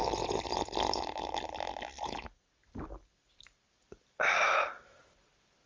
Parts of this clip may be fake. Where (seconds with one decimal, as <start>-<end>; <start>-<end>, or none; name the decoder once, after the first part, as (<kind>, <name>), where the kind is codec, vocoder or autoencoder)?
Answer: none